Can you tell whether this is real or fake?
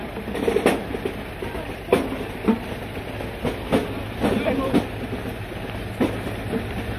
real